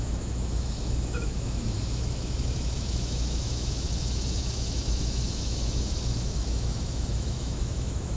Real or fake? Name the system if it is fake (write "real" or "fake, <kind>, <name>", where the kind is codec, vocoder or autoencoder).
fake, autoencoder, DAC-VAE